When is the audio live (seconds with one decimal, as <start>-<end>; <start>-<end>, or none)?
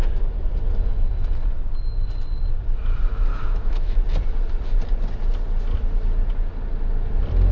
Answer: 0.0-3.3; 3.9-7.5